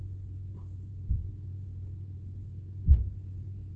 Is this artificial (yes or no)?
no